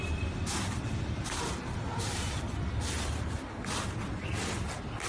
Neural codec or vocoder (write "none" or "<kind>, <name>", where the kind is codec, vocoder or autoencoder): none